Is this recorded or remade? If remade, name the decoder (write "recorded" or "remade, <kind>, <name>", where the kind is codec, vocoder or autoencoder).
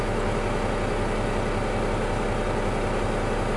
recorded